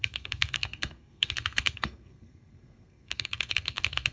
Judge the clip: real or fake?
fake